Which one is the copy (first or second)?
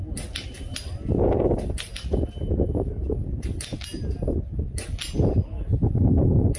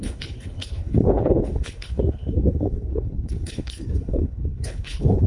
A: second